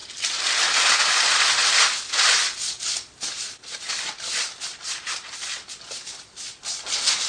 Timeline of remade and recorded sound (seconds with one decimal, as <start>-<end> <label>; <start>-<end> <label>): 0.0-7.3 recorded